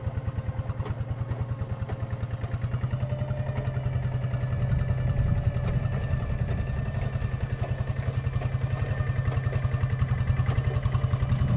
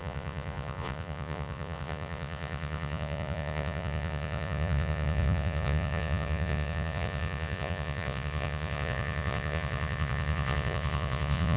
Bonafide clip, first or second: first